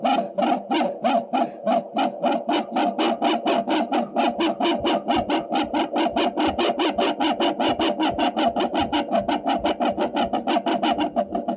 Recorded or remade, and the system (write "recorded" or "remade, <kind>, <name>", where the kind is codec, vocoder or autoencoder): recorded